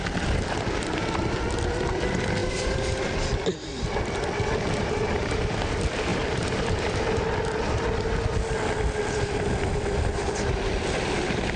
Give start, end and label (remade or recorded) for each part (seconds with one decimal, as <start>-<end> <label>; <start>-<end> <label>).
0.0-11.6 remade